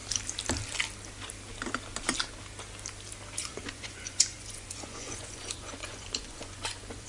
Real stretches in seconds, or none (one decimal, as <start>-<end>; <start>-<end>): 0.0-3.4